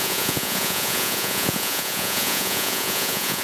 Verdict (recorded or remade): remade